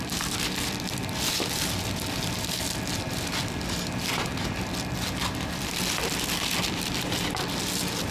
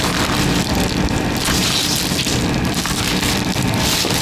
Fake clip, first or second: second